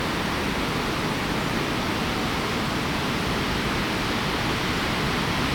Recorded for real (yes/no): yes